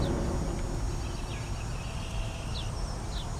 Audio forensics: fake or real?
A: real